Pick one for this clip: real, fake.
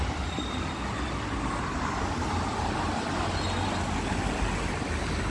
real